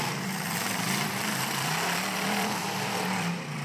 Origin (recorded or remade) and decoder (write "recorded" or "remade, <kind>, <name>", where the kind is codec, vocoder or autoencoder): remade, vocoder, BigVGAN v2